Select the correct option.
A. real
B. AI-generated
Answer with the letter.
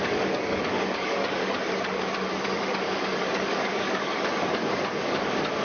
B